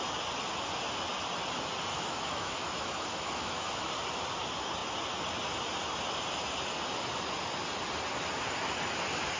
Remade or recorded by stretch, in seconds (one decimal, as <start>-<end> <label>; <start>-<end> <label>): 0.0-1.9 recorded; 1.9-3.9 remade; 3.9-9.4 recorded